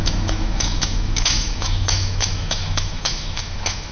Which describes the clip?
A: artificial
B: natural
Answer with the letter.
A